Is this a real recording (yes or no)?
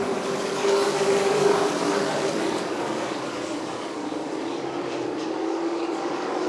no